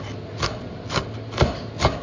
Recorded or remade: recorded